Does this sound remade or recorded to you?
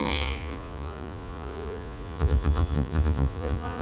remade